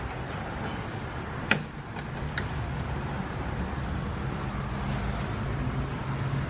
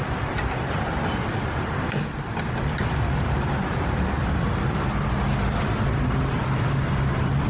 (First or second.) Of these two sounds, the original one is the first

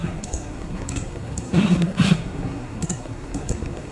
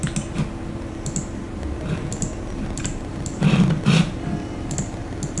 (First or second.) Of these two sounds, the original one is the second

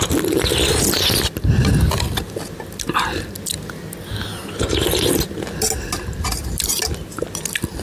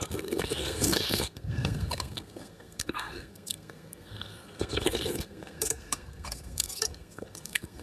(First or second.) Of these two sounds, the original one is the first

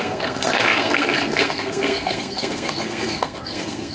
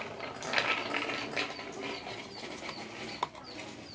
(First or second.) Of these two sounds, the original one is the second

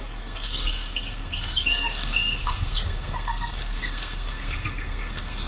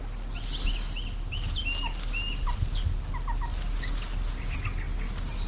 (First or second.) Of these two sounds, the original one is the second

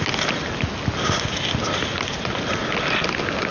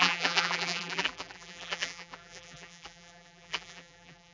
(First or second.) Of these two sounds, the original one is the first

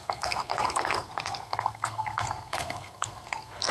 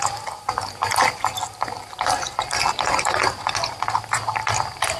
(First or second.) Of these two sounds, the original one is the second